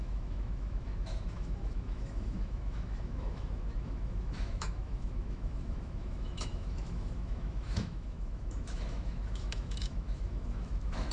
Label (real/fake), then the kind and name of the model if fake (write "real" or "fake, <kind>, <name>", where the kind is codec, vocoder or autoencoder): fake, autoencoder, DAC-VAE